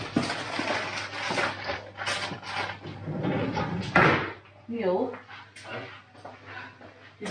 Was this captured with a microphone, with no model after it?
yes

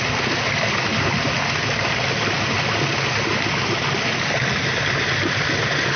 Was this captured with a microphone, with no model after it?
yes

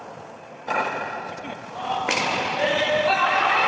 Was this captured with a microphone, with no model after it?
yes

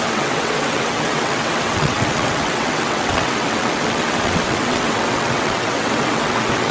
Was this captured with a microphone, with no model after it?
no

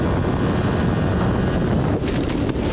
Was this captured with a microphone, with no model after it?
yes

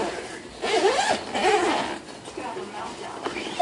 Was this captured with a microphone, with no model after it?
yes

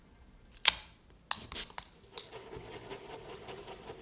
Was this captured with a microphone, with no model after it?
yes